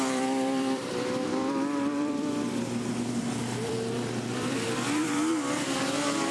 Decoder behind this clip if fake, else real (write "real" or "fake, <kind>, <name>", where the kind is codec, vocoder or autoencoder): fake, vocoder, BigVGAN v2